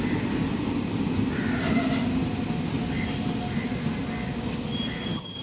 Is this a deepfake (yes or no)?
no